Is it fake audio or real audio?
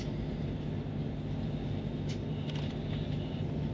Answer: real